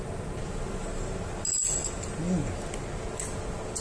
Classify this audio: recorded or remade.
recorded